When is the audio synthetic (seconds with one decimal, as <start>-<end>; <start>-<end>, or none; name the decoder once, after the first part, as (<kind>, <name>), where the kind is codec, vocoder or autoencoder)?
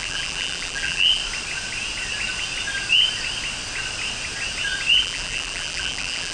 0.0-1.2 (vocoder, BigVGAN v2); 5.0-6.3